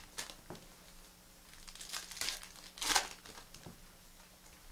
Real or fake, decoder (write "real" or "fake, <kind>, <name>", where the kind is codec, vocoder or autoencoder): real